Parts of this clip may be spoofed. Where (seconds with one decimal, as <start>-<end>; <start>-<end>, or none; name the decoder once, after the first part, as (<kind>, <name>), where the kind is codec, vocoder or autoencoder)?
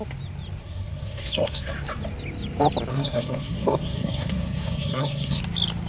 0.6-1.7 (codec, SNAC); 2.9-5.4